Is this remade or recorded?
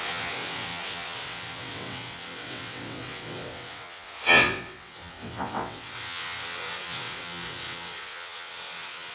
remade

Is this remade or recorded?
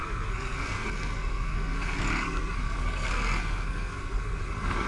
remade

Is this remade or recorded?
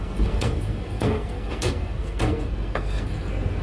remade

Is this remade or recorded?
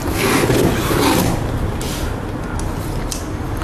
recorded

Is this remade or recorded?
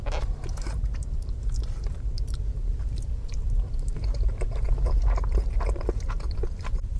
remade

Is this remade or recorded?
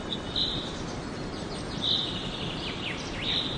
remade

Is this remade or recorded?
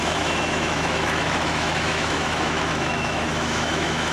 remade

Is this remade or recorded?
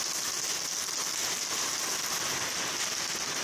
recorded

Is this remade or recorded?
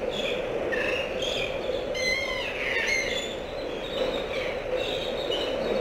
recorded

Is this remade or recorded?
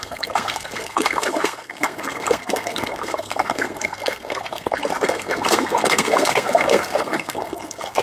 remade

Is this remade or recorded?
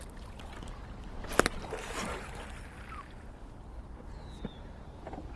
recorded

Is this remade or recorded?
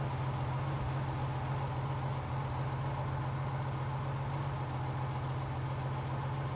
recorded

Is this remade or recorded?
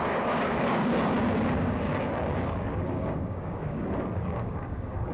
remade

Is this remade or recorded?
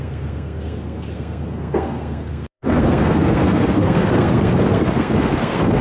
remade